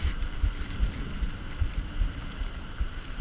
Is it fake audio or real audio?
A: fake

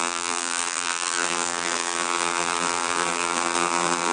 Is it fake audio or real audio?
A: fake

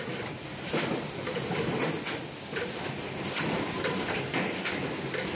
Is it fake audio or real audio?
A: real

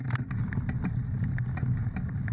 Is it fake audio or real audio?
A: real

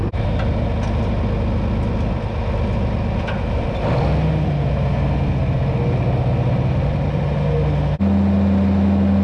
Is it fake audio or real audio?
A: real